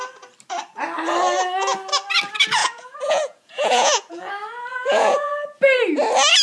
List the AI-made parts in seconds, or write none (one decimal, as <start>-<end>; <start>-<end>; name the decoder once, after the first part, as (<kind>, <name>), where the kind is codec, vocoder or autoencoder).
2.6-4.3 (vocoder, Vocos); 4.7-5.3